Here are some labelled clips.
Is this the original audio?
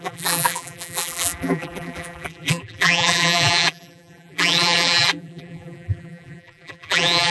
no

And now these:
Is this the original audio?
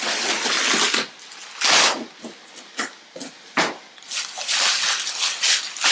yes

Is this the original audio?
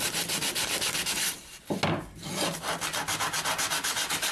yes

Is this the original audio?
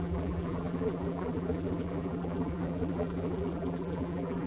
no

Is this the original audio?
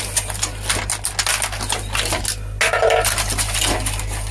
yes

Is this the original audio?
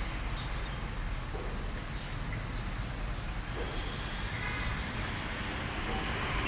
yes